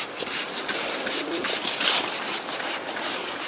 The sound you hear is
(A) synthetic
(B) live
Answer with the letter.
B